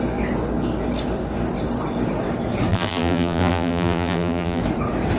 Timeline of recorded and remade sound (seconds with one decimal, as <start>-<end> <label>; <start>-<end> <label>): 0.0-2.7 recorded; 2.7-4.6 remade; 4.6-5.2 recorded